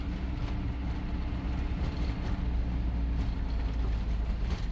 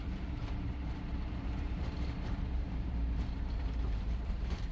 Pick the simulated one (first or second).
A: second